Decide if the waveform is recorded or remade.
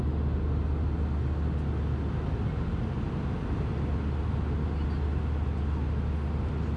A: recorded